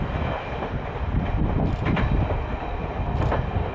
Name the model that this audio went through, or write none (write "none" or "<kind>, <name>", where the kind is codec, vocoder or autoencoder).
none